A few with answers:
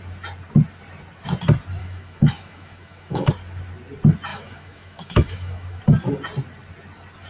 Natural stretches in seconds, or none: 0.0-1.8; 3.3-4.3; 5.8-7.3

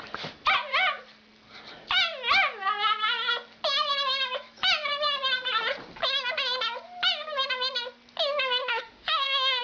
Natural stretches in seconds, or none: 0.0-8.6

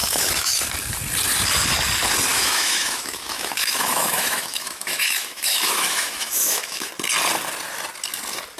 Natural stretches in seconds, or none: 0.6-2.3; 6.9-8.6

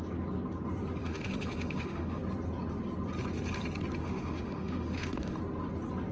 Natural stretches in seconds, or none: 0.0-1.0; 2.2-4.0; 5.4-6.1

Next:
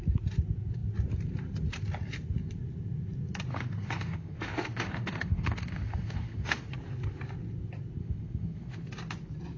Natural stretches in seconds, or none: 0.0-3.5; 6.7-8.0; 8.9-9.6

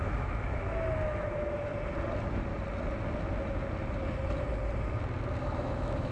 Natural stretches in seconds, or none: 1.7-5.4

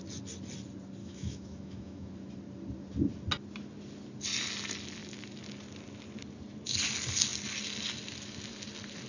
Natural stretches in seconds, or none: 0.0-1.0; 2.1-9.1